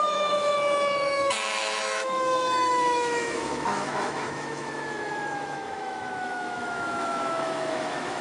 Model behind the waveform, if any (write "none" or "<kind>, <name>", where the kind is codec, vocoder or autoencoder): autoencoder, DAC-VAE